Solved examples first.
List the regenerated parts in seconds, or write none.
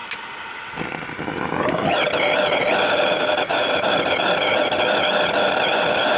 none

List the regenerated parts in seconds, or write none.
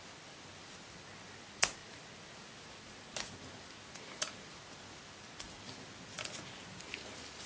0.0-1.8 (vocoder, BigVGAN v2); 3.9-7.5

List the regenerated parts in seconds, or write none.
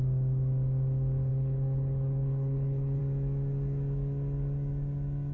1.3-3.0 (codec, HILCodec)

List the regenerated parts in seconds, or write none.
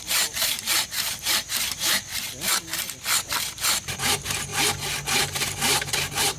0.0-2.1 (vocoder, BigVGAN v2); 3.9-4.5; 5.2-6.4